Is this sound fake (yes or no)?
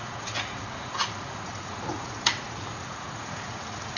yes